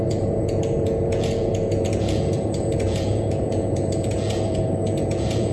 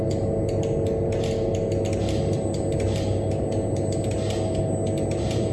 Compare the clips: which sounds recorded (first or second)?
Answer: second